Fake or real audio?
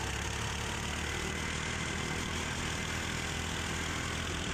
real